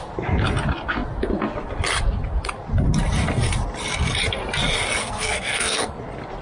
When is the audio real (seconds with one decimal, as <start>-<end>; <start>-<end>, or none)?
0.0-5.0; 6.0-6.4